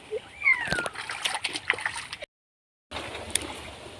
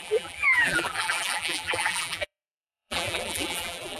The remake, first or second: second